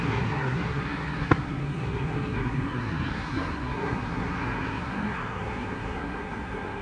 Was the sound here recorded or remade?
remade